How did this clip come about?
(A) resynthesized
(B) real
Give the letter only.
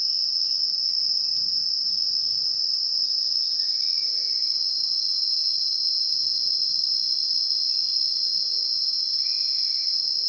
B